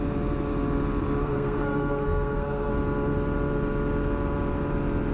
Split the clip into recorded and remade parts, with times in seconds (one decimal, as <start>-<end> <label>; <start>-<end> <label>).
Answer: 0.0-1.2 recorded; 1.2-2.7 remade; 2.7-5.1 recorded